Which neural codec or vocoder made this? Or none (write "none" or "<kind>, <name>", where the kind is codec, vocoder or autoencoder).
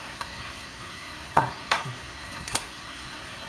codec, SNAC